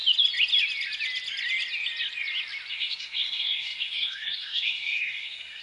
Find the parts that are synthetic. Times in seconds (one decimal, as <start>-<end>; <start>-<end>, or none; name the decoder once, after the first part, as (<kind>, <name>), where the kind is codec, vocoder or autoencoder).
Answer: 2.7-5.6 (codec, SNAC)